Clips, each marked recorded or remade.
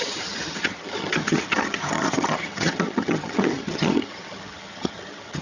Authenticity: remade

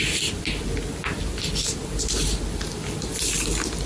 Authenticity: recorded